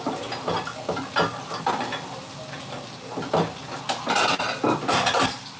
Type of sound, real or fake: real